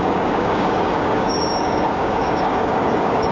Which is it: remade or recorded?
remade